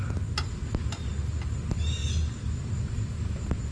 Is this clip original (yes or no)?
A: yes